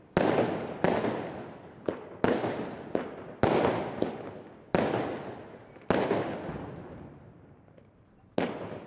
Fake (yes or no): no